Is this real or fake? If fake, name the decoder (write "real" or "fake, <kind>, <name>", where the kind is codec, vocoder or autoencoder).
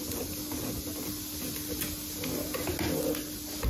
real